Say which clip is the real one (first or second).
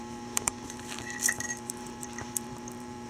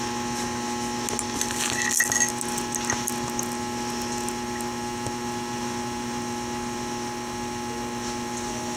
second